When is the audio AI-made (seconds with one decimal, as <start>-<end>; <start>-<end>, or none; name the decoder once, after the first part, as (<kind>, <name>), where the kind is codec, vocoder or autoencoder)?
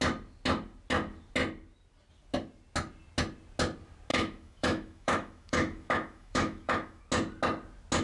4.1-7.0 (autoencoder, DAC-VAE)